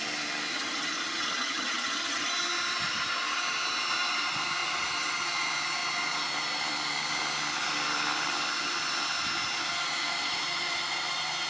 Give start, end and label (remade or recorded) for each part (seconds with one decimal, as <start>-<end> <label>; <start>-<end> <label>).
0.0-0.5 recorded; 0.5-2.3 remade; 2.3-11.5 recorded